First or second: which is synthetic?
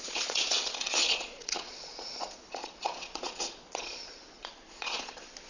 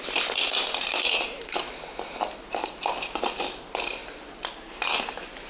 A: first